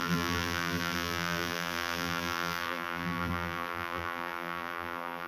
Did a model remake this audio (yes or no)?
yes